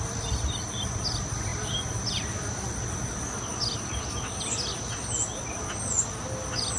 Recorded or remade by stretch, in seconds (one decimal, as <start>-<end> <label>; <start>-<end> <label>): 0.0-6.8 recorded